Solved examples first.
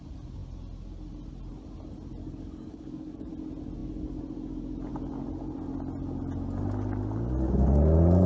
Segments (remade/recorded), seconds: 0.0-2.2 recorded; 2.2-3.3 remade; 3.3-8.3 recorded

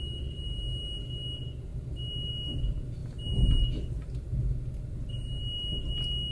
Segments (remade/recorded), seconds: 0.0-6.3 recorded

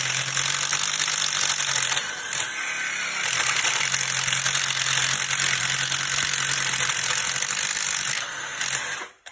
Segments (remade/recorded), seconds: 0.0-8.1 recorded; 8.1-8.6 remade; 8.6-9.3 recorded

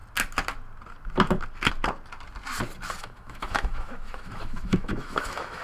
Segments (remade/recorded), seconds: 0.0-3.0 recorded; 3.0-5.6 remade

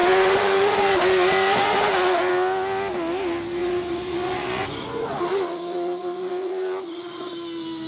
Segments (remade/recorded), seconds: 0.0-2.3 remade; 2.3-3.6 recorded; 3.6-7.3 remade; 7.3-7.9 recorded

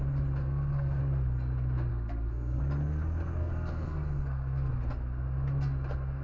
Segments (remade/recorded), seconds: 0.0-0.4 recorded; 0.4-1.0 remade; 1.0-1.9 recorded; 1.9-2.6 remade; 2.6-3.4 recorded; 3.4-4.7 remade; 4.7-6.2 recorded